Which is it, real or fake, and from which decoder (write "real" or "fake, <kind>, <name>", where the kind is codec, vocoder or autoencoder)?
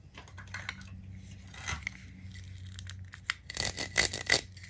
real